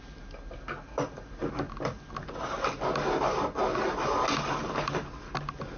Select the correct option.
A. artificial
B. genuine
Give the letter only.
B